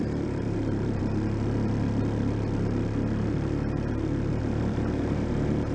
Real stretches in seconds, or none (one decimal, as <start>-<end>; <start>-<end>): 1.0-4.4